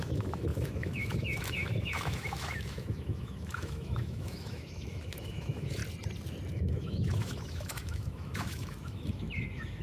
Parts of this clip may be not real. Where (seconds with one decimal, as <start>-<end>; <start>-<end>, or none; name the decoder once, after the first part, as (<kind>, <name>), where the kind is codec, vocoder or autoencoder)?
0.0-5.8 (autoencoder, DAC-VAE); 6.5-9.8